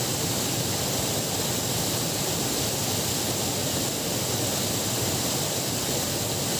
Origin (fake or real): real